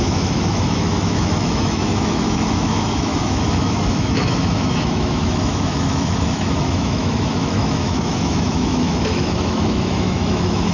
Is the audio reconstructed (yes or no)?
yes